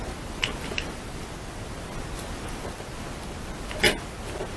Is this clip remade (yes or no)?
no